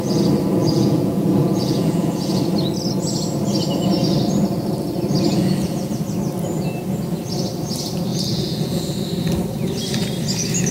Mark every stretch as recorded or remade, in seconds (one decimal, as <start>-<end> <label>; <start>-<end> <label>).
0.0-0.6 recorded; 0.6-2.4 remade; 2.4-5.3 recorded; 5.3-5.9 remade; 5.9-8.1 recorded; 8.1-8.8 remade; 8.8-10.7 recorded